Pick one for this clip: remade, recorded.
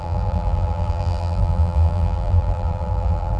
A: remade